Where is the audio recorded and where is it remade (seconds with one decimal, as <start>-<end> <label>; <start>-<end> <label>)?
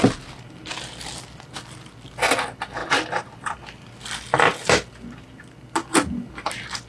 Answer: 0.0-6.9 recorded